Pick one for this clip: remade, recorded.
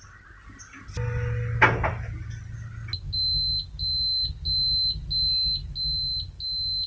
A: recorded